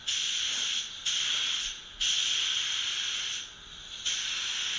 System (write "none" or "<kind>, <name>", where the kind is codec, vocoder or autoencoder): none